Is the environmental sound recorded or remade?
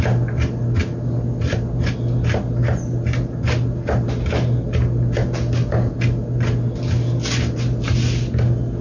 recorded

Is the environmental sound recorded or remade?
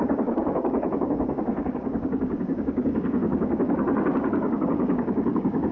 remade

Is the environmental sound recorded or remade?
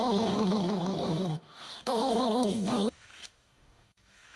remade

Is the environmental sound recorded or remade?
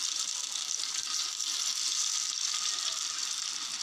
recorded